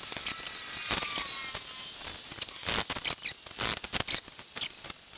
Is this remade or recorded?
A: recorded